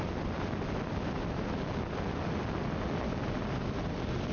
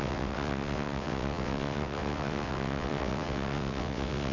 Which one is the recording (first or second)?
first